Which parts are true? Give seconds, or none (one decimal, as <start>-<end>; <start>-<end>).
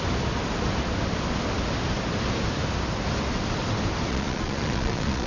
0.0-4.1